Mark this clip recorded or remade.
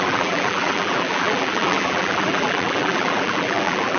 remade